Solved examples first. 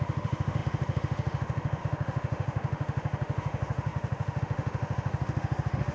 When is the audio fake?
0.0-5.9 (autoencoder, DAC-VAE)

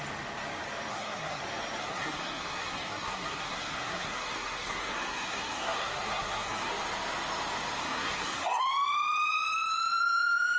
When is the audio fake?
0.9-1.4 (codec, SNAC); 1.8-6.7; 7.8-8.6

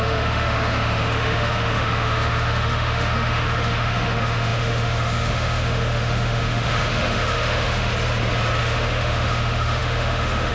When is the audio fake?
0.0-7.9 (autoencoder, DAC-VAE); 8.6-10.5

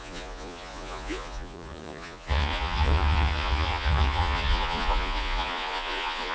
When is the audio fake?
0.0-6.3 (vocoder, Vocos)